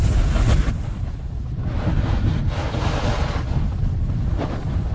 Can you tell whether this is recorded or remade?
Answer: recorded